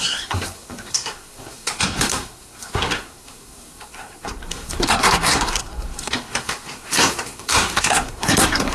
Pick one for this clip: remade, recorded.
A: remade